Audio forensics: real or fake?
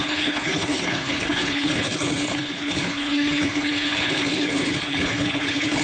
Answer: fake